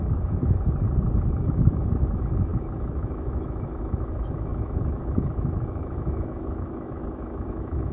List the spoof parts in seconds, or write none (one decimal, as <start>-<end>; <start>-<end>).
0.0-0.4; 1.5-7.9